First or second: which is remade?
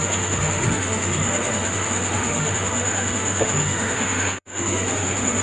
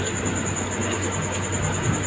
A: first